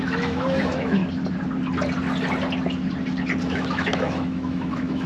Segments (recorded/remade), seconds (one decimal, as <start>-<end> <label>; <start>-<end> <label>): 0.0-1.0 remade; 1.0-3.4 recorded; 3.4-5.1 remade